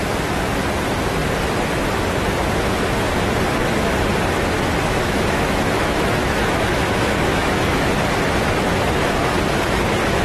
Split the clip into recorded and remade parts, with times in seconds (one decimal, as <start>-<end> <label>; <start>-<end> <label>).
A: 0.0-4.9 recorded; 4.9-7.9 remade; 7.9-10.2 recorded